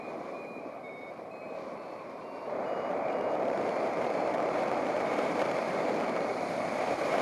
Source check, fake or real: fake